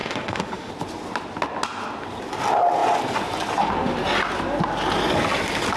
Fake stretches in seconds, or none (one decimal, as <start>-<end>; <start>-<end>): 0.0-0.7